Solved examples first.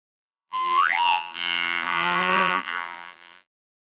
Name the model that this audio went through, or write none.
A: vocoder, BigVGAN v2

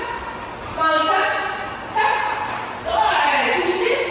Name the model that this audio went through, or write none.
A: none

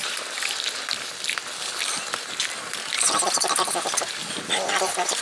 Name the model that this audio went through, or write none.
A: none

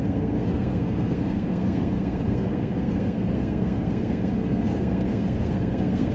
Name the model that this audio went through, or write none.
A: codec, SNAC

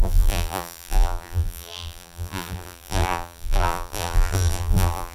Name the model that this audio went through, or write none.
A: vocoder, BigVGAN v2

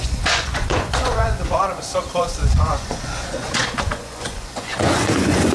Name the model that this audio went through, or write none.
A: vocoder, Vocos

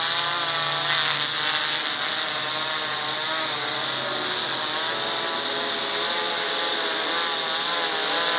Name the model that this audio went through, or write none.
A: none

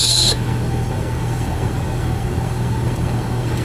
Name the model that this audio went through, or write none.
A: codec, SNAC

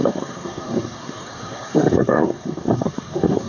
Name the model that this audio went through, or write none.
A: codec, SNAC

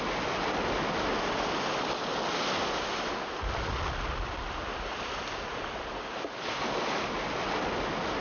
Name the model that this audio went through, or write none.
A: none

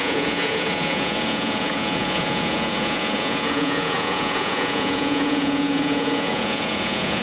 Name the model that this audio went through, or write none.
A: vocoder, Vocos